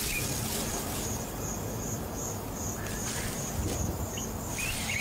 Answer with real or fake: real